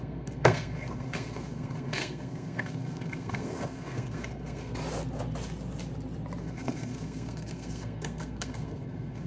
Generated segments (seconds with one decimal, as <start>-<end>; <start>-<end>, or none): 0.0-4.7; 6.4-9.3